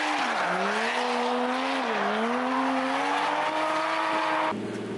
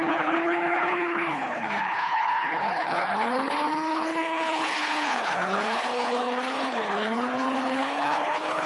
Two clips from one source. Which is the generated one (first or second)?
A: second